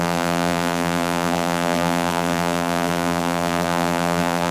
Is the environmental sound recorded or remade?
remade